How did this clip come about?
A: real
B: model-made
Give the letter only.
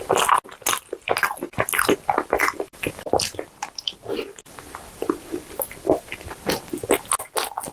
A